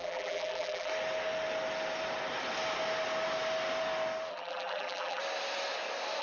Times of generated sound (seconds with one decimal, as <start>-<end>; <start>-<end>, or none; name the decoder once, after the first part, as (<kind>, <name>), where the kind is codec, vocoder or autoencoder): 0.0-0.9 (vocoder, BigVGAN v2); 4.3-5.2